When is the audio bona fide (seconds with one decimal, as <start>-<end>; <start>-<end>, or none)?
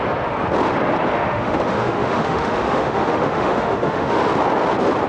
0.0-1.1; 4.2-5.1